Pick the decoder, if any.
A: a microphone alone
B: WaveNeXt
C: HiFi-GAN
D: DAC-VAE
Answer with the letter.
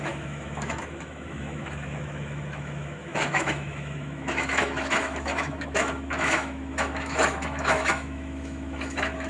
D